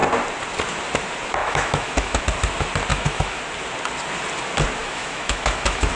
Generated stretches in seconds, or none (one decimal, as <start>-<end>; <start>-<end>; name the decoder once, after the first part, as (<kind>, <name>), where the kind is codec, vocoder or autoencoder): 1.4-2.2 (autoencoder, DAC-VAE); 2.9-3.4; 4.8-6.0

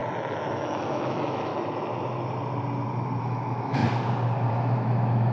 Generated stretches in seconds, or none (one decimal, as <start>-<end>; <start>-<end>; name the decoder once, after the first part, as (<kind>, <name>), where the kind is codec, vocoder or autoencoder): 0.5-1.5 (autoencoder, DAC-VAE); 3.2-3.8; 4.5-5.3